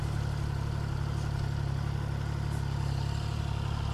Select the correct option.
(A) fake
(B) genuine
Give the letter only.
B